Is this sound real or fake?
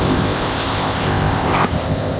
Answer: fake